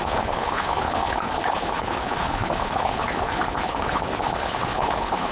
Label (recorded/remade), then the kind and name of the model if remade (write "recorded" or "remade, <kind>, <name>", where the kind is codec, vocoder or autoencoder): remade, codec, HILCodec